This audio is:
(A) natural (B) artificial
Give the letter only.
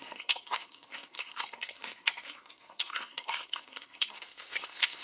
B